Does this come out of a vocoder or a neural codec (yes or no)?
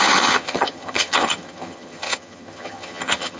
yes